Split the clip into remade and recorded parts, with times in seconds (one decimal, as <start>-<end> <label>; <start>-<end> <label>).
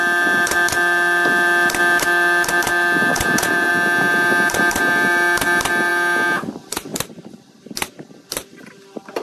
0.0-3.1 recorded; 3.1-3.7 remade; 3.7-9.2 recorded